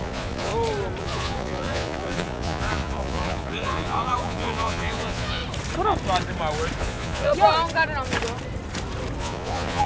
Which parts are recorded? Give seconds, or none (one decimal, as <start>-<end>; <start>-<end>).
0.5-1.0; 5.4-6.8; 7.3-9.2